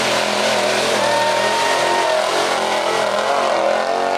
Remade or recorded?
recorded